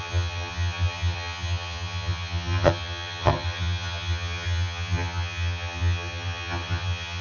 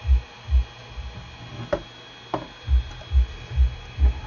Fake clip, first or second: first